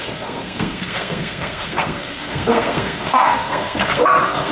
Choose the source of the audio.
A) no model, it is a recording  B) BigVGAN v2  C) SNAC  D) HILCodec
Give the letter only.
C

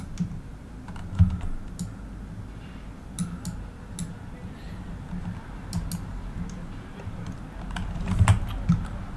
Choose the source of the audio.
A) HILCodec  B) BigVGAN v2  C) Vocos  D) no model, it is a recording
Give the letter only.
D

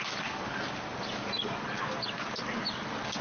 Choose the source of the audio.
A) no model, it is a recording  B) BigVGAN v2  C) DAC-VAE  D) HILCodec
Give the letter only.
A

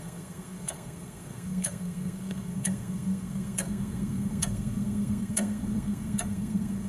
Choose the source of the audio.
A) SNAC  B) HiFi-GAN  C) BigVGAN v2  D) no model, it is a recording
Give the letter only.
A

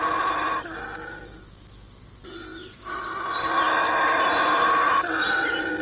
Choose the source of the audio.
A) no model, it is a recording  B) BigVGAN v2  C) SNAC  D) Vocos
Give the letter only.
A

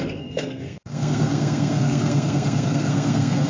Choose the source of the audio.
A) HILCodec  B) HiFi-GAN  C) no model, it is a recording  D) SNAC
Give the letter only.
D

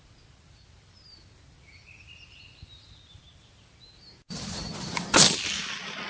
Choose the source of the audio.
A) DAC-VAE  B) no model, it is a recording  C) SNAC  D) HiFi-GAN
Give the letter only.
B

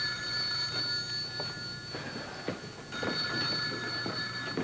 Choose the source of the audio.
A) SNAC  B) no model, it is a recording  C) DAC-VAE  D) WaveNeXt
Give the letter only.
B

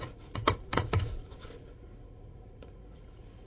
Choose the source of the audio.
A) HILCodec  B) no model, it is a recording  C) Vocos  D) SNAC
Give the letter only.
C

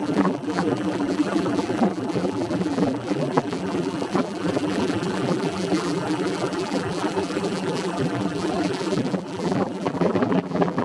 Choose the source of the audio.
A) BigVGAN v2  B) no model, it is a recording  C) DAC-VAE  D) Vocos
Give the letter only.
A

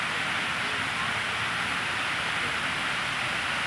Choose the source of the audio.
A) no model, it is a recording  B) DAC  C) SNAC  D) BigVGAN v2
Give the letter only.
A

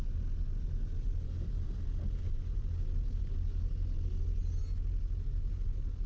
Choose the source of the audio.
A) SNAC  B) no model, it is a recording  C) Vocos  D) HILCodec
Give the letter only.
B